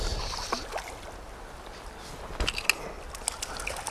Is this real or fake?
real